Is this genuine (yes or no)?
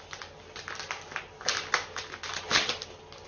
yes